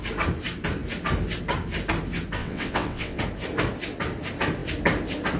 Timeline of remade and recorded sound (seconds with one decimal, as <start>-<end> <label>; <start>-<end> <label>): 0.0-2.4 recorded; 2.4-3.2 remade; 3.2-5.4 recorded